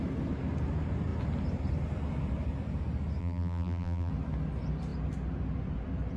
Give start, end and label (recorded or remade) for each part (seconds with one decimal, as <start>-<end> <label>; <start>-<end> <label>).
0.0-3.2 recorded; 3.2-4.1 remade; 4.1-6.2 recorded